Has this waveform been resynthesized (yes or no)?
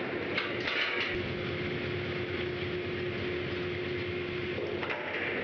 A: no